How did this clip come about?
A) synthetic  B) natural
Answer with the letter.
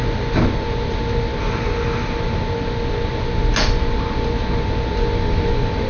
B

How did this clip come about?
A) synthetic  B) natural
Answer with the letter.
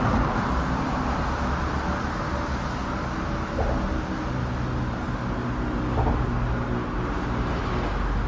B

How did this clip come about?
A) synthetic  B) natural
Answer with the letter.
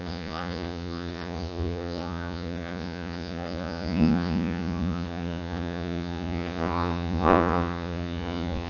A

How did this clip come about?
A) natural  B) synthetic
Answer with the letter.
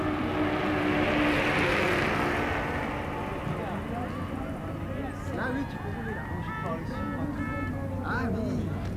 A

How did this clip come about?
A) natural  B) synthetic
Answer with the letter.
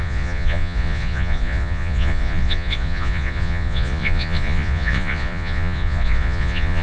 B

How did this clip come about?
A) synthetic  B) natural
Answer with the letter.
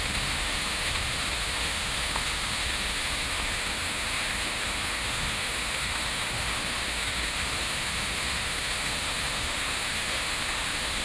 A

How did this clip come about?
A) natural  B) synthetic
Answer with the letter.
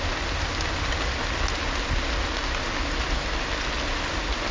A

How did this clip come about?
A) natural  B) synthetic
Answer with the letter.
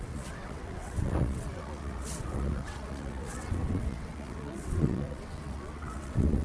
B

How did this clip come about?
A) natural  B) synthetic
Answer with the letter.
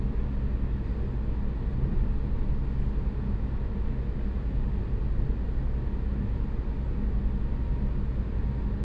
A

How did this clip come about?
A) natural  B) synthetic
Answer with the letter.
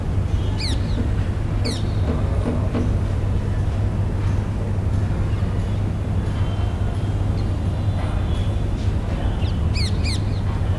A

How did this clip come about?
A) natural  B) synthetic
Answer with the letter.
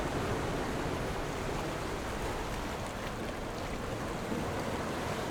A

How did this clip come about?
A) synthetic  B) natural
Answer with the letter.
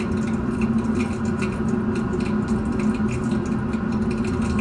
B